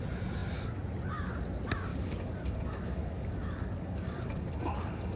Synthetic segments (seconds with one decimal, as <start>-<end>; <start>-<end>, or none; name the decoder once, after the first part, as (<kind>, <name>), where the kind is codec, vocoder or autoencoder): 1.9-5.2 (codec, DAC)

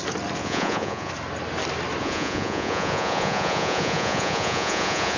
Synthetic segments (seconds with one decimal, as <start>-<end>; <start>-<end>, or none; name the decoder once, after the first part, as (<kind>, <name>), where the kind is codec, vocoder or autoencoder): 0.4-1.1 (vocoder, Vocos); 2.0-5.2

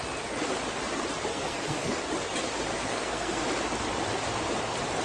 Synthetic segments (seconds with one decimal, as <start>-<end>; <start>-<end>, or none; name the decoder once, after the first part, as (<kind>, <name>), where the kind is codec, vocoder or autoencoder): 1.3-2.0 (codec, SNAC); 2.7-3.4

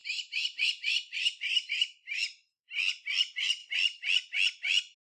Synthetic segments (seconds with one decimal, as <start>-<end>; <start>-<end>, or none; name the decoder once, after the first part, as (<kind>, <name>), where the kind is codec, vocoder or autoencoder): 0.0-2.2 (vocoder, BigVGAN v2)